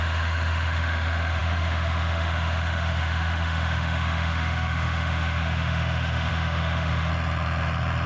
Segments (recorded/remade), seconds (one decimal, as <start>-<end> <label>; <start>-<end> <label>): 0.0-7.1 remade; 7.1-8.1 recorded